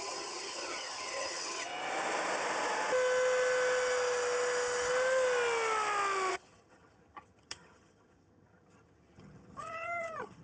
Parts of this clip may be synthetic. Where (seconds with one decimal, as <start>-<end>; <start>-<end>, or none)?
0.0-1.7; 6.3-10.4